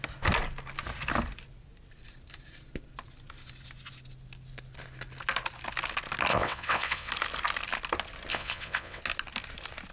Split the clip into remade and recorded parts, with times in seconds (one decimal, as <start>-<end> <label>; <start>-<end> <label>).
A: 0.0-6.3 recorded; 6.3-7.1 remade; 7.1-8.3 recorded; 8.3-9.0 remade; 9.0-9.9 recorded